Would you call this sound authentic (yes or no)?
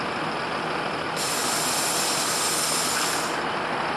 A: yes